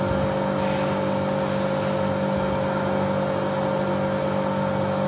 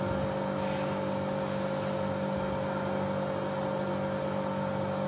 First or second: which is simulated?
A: second